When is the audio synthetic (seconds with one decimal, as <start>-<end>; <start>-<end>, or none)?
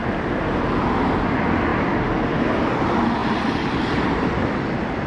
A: none